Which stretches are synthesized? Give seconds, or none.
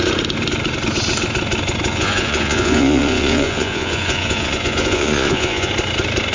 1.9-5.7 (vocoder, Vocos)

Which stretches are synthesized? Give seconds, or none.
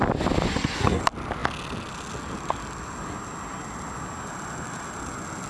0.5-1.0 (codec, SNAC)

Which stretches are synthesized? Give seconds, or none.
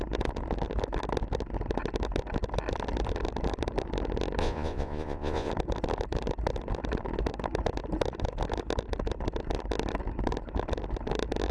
4.4-5.5 (vocoder, Vocos)